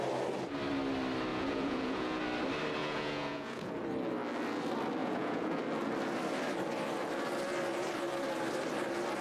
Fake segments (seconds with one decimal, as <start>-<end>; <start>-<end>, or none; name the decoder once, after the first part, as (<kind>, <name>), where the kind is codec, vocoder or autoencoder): 1.3-2.2 (vocoder, Vocos); 2.8-3.7; 5.0-5.6